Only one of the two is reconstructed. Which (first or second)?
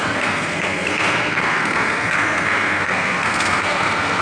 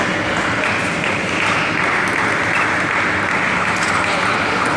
first